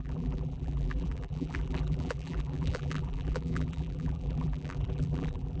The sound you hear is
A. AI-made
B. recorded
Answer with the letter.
A